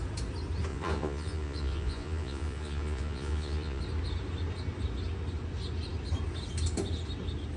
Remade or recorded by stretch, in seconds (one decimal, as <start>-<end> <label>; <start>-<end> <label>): 0.0-0.7 recorded; 0.7-3.8 remade; 3.8-7.6 recorded